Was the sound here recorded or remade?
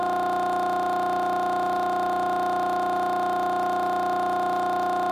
recorded